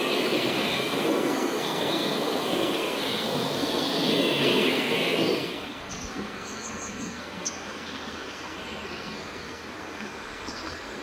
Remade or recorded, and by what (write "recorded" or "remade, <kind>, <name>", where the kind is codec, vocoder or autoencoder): remade, codec, SNAC